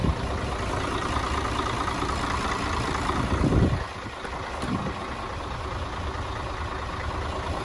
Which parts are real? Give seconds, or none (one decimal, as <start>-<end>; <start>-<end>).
0.0-7.6

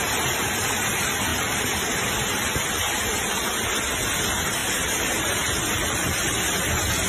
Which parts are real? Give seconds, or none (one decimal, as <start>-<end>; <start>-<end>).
0.0-1.3; 2.1-4.6; 5.2-7.1

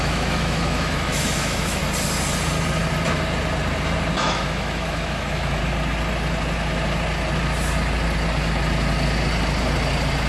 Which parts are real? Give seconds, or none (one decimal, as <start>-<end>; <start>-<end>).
1.8-4.2; 5.6-10.3

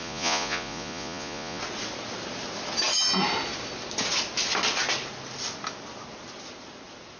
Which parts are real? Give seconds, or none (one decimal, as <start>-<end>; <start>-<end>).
1.6-7.2

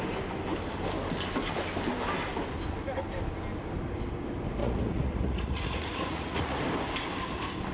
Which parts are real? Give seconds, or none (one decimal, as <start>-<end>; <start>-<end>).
0.0-4.6; 6.6-7.7

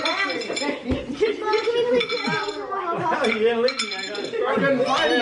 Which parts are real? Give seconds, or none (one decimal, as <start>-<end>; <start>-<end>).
0.0-5.2

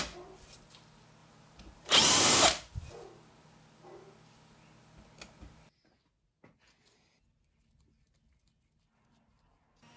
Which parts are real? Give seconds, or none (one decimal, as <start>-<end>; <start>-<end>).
0.0-1.2; 2.9-10.0

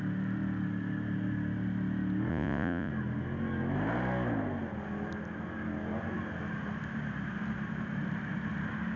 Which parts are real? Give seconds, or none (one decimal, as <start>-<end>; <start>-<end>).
0.0-2.3; 2.9-9.0